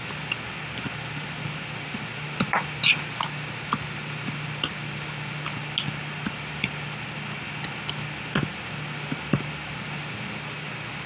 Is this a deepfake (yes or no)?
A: no